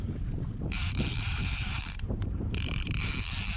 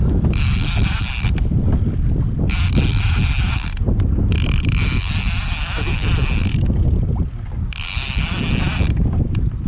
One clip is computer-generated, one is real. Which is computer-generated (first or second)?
first